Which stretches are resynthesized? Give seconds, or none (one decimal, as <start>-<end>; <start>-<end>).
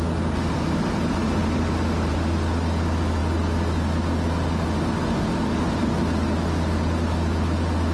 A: none